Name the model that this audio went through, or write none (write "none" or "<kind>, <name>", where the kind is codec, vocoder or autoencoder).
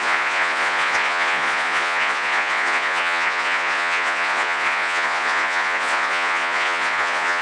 vocoder, Vocos